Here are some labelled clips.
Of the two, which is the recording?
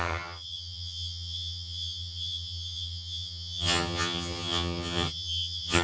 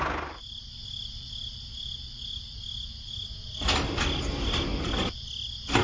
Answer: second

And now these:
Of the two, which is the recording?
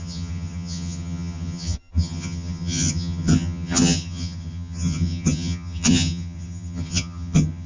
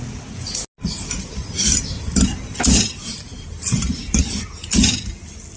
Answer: second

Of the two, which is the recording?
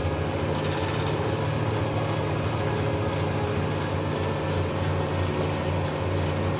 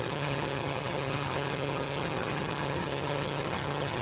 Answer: first